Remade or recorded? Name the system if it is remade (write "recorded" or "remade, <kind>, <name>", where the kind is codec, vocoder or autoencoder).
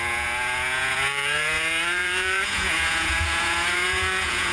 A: remade, vocoder, Vocos